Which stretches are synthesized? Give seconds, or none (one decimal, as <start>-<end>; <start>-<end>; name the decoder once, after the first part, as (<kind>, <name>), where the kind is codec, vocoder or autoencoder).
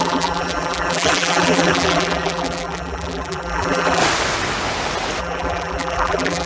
0.0-4.0 (vocoder, BigVGAN v2); 5.2-6.5